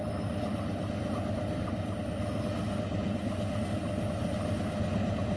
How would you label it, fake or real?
real